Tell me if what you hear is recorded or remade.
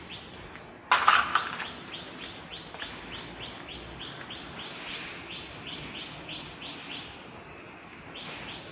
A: recorded